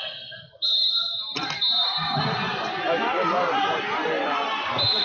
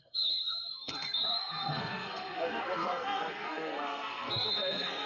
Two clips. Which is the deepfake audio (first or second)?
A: second